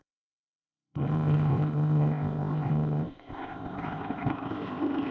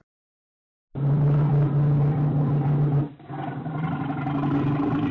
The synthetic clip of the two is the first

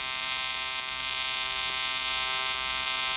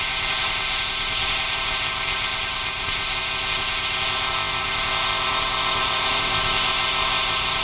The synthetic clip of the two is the second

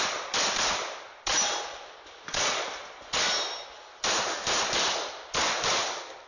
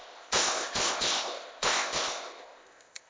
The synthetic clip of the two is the second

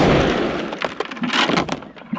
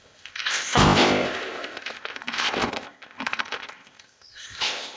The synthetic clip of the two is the second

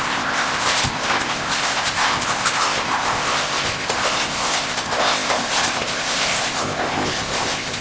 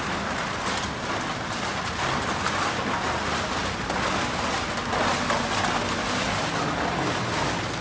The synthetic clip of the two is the first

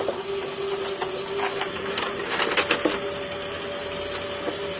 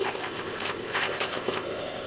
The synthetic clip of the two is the second